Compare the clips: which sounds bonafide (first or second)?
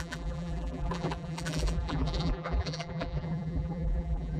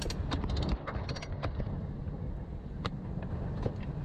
second